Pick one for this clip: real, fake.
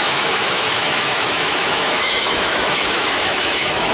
fake